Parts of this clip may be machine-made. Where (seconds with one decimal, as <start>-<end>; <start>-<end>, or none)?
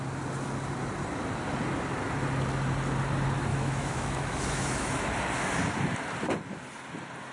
3.5-5.1